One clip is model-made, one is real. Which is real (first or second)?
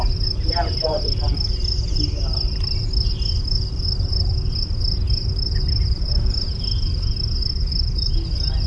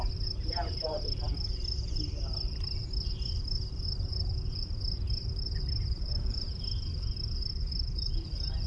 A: first